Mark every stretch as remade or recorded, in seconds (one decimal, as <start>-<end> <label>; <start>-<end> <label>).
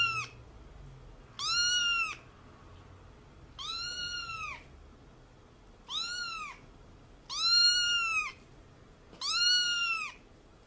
0.0-3.7 recorded; 3.7-4.5 remade; 4.5-10.7 recorded